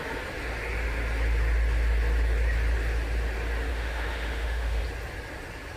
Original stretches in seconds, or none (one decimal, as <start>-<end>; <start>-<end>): 0.0-3.7; 4.8-5.8